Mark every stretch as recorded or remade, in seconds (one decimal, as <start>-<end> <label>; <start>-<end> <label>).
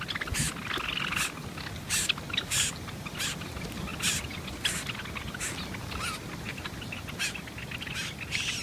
0.0-8.6 recorded